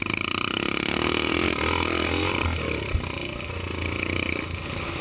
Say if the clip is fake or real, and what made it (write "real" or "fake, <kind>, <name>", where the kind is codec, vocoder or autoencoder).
real